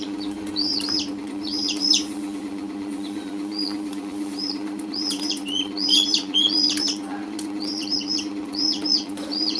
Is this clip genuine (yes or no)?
no